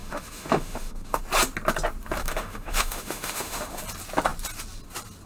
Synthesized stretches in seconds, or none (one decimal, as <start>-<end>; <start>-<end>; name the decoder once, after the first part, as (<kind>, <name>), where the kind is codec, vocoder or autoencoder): 0.0-1.2 (autoencoder, DAC-VAE); 2.2-3.8